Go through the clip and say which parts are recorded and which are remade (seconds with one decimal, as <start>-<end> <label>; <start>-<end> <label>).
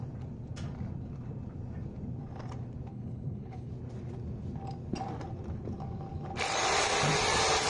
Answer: 0.0-2.9 recorded; 2.9-3.7 remade; 3.7-7.7 recorded